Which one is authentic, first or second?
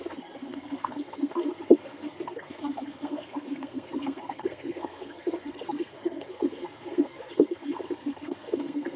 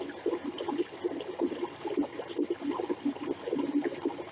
second